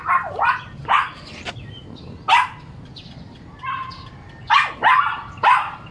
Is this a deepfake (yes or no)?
no